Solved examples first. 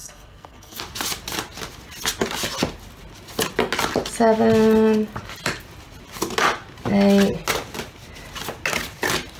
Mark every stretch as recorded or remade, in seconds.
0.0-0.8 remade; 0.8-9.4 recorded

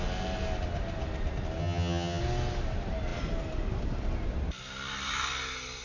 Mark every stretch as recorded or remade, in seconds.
0.0-1.6 recorded; 1.6-2.2 remade; 2.2-5.8 recorded

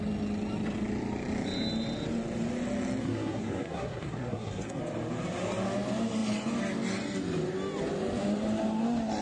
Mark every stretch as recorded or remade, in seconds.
0.0-3.0 recorded; 3.0-4.8 remade; 4.8-9.2 recorded

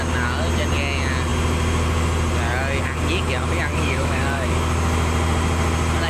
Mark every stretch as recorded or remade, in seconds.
0.0-3.7 recorded; 3.7-4.5 remade; 4.5-6.1 recorded

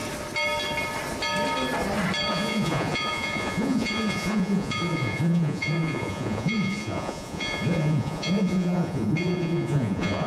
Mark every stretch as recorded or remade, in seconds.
0.0-2.3 recorded; 2.3-10.3 remade

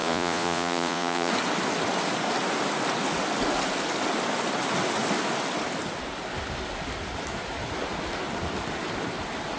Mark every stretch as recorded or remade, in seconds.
0.0-1.3 remade; 1.3-9.6 recorded

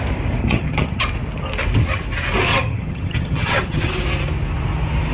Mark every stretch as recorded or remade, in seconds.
0.0-0.4 recorded; 0.4-1.0 remade; 1.0-2.5 recorded; 2.5-3.9 remade; 3.9-5.1 recorded